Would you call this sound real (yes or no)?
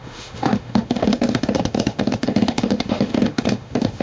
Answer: no